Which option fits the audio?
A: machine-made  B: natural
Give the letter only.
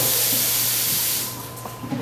B